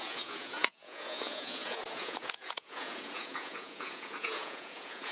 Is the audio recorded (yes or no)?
no